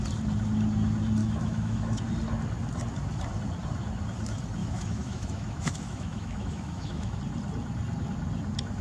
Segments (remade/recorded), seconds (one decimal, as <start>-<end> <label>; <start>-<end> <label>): 0.0-1.2 recorded; 1.2-2.0 remade; 2.0-4.6 recorded; 4.6-7.2 remade; 7.2-8.8 recorded